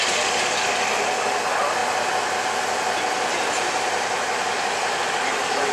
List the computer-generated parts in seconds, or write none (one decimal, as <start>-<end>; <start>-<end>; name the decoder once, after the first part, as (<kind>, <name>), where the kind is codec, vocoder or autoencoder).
none